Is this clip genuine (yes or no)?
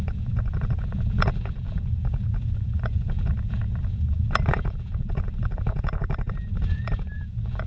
no